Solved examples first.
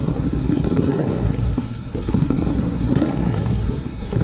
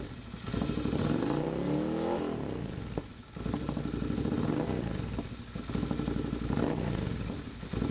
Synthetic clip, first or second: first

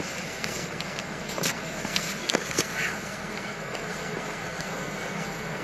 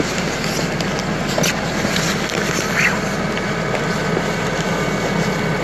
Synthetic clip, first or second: first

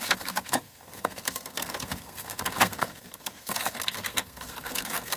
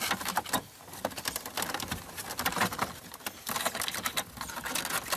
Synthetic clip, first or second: first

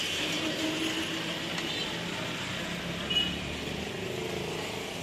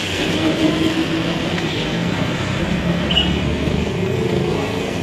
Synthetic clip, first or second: second